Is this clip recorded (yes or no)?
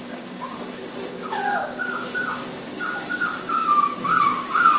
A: no